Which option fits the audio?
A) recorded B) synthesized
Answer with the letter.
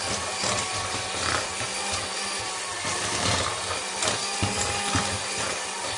A